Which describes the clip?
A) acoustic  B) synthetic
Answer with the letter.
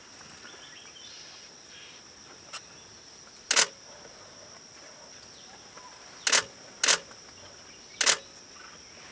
A